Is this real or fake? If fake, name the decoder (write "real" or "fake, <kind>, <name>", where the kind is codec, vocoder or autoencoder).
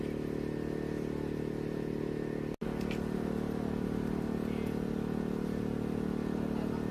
real